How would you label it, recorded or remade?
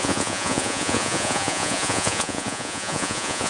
remade